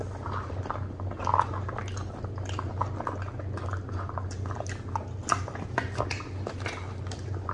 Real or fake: real